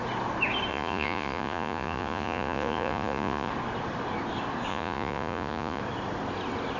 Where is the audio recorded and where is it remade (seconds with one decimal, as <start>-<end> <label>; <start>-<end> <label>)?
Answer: 0.0-0.7 recorded; 0.7-3.5 remade; 3.5-4.7 recorded; 4.7-5.8 remade; 5.8-6.8 recorded